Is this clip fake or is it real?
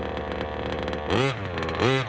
real